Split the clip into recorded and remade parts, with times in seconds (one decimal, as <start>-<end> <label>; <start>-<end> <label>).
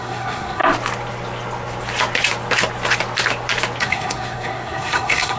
0.0-0.6 remade; 0.6-3.8 recorded; 3.8-5.4 remade